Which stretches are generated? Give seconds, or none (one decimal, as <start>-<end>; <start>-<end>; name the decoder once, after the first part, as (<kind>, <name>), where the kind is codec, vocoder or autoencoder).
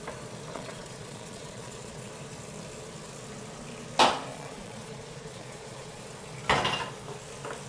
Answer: 0.5-2.1 (vocoder, Vocos); 4.3-6.0